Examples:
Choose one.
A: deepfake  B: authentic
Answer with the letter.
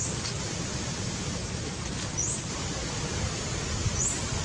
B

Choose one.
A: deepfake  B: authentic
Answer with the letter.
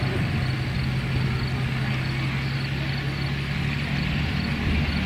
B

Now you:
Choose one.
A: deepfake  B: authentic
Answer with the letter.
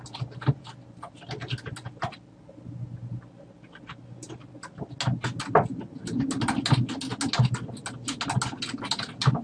B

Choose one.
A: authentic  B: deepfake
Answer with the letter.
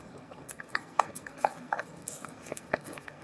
B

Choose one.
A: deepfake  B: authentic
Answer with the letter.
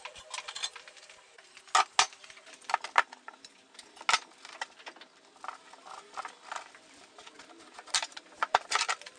B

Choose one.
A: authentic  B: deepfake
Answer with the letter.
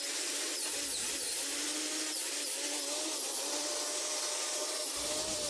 A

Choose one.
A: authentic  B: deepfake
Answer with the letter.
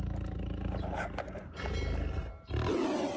A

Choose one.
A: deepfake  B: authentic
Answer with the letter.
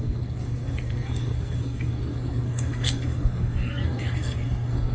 A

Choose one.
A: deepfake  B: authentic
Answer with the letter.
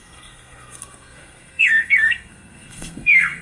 A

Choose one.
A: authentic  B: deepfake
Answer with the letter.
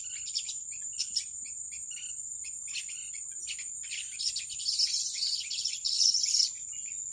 A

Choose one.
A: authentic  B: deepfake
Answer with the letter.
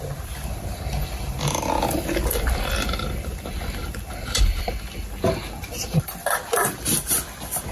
B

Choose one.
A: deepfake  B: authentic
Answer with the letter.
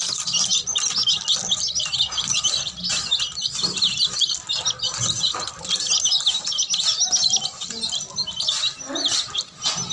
B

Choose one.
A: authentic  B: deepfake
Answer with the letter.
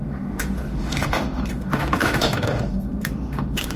B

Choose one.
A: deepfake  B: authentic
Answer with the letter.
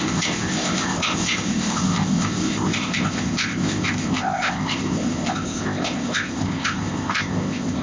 A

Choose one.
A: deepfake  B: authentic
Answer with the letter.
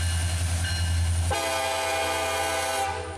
B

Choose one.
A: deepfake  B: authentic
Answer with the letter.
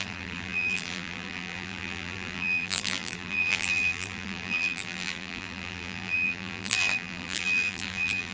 A